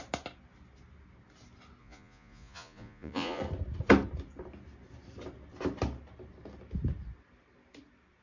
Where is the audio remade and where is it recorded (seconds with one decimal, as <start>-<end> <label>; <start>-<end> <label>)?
0.0-1.8 recorded; 1.8-3.4 remade; 3.4-8.2 recorded